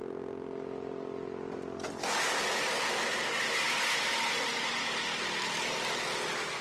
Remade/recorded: recorded